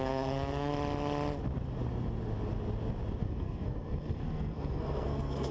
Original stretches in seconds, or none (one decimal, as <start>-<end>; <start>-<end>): 0.7-3.2